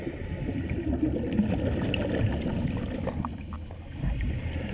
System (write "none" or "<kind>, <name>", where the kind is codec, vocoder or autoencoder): none